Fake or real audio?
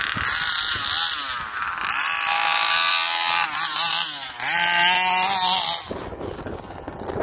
real